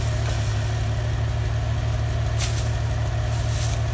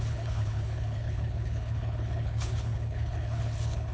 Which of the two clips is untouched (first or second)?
first